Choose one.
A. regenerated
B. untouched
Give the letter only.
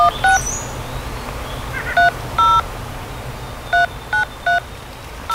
B